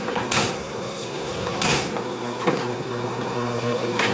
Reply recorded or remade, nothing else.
remade